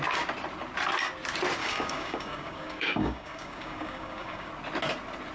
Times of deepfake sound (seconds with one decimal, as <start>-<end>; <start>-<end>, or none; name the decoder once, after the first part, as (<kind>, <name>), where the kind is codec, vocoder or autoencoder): 1.6-4.5 (codec, DAC)